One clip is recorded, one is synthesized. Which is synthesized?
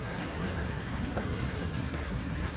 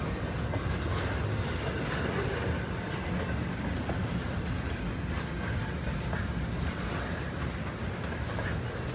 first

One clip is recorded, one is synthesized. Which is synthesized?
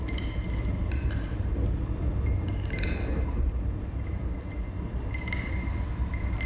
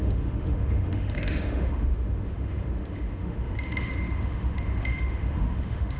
second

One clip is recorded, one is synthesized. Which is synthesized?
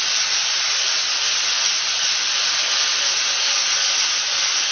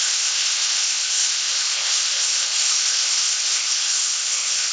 second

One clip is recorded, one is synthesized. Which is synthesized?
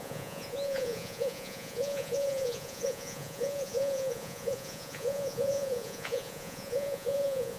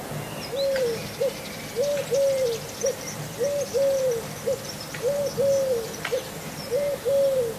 first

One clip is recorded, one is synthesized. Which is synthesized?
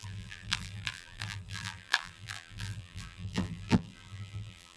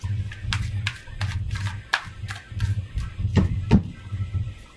first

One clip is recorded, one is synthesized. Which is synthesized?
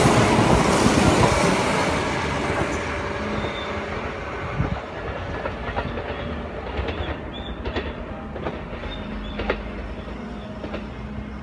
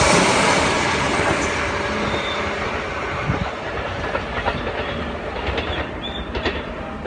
second